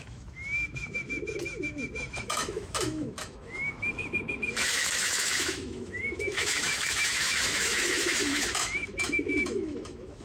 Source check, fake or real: fake